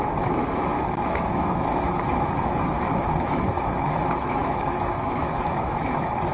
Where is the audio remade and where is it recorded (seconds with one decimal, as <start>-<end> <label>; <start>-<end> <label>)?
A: 0.0-6.3 remade